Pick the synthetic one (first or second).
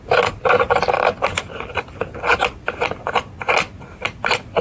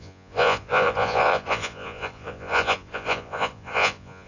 second